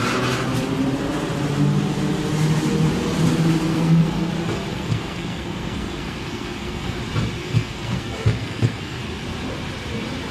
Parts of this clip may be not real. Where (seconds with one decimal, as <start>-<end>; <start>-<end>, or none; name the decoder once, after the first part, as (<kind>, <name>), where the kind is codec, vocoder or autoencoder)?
3.7-4.3 (codec, SNAC); 4.7-7.0; 7.4-9.0